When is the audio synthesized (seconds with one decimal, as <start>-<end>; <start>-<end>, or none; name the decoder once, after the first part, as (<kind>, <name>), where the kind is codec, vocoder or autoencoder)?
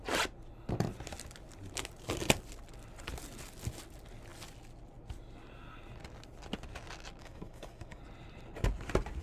7.2-8.0 (codec, DAC)